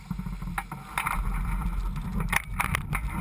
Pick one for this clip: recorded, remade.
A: recorded